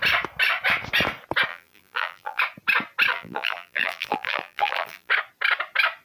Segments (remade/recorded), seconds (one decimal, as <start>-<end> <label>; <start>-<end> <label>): 0.0-1.5 recorded; 1.5-2.4 remade; 2.4-3.1 recorded; 3.1-5.1 remade; 5.1-6.0 recorded